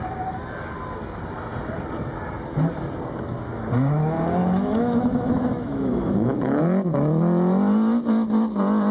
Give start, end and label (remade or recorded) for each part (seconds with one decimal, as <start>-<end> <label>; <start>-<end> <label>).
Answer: 0.0-4.4 recorded; 4.4-6.6 remade; 6.6-8.9 recorded